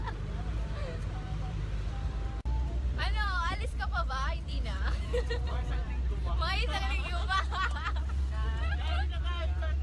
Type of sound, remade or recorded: remade